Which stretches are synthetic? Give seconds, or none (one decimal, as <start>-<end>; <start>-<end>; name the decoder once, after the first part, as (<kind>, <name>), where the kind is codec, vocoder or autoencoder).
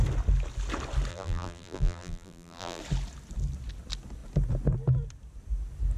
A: 1.1-2.8 (vocoder, BigVGAN v2)